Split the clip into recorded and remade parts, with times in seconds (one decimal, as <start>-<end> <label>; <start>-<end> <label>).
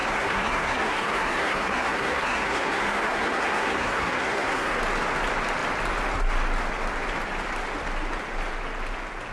0.0-4.8 remade; 4.8-9.3 recorded